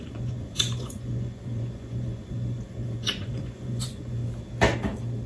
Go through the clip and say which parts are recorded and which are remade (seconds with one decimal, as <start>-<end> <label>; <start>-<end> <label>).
0.0-4.2 remade; 4.2-5.3 recorded